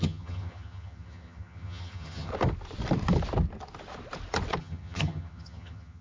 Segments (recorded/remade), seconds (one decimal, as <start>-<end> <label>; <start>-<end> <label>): 0.0-2.3 remade; 2.3-4.6 recorded; 4.6-6.0 remade

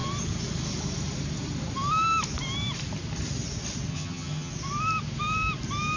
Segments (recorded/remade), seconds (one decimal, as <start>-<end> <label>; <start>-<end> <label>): 0.0-3.9 recorded; 3.9-4.5 remade; 4.5-6.0 recorded

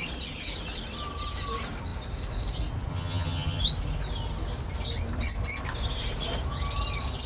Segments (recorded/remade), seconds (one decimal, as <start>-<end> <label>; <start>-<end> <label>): 0.0-2.9 recorded; 2.9-3.6 remade; 3.6-7.3 recorded

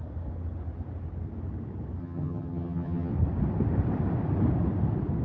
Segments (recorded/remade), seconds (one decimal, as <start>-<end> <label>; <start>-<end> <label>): 0.0-2.0 recorded; 2.0-3.1 remade; 3.1-5.2 recorded

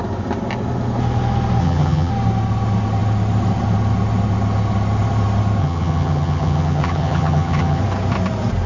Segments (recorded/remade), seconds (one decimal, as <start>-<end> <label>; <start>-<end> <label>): 0.0-1.6 recorded; 1.6-2.1 remade; 2.1-5.6 recorded; 5.6-7.8 remade; 7.8-8.7 recorded

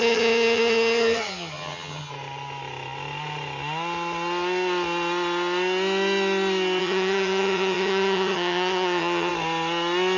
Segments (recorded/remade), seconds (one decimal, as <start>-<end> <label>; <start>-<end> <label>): 0.0-2.1 remade; 2.1-6.8 recorded; 6.8-9.3 remade; 9.3-10.2 recorded